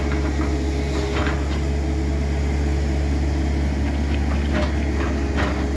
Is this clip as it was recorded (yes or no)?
yes